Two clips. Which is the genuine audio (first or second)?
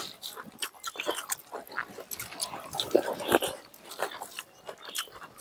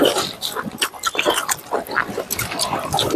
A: first